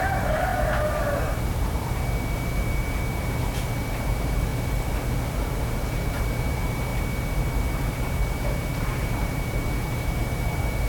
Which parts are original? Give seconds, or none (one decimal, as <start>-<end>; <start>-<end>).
4.5-5.3; 6.9-7.7